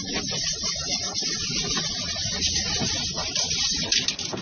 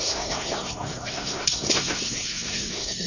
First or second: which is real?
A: first